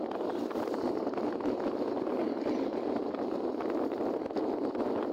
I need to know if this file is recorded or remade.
recorded